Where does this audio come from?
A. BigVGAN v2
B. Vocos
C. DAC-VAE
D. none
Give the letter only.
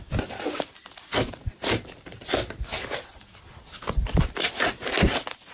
D